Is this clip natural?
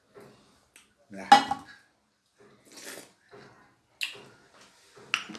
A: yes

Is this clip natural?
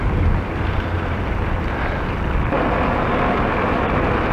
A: yes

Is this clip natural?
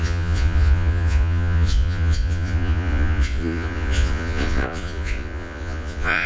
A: no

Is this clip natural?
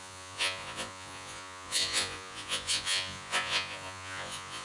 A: no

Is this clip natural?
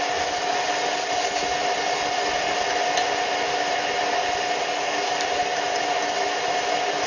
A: yes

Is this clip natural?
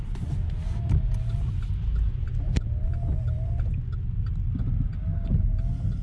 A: yes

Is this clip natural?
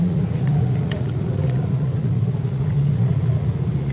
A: no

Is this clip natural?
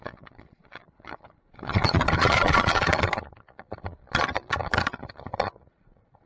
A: no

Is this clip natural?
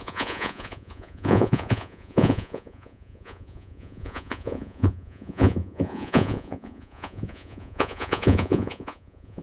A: no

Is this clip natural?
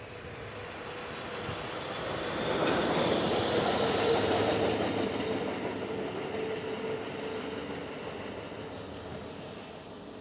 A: yes